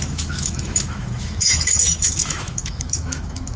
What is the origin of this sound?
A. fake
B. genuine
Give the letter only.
A